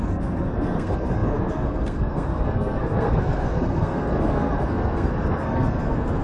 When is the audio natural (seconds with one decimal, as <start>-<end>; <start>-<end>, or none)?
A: none